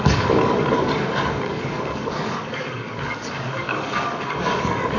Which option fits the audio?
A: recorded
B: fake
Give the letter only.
B